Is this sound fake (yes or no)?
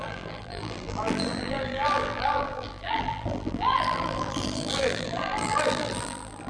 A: yes